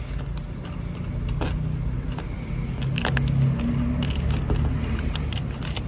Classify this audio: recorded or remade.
recorded